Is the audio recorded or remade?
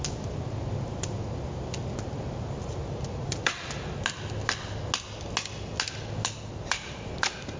recorded